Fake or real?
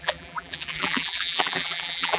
fake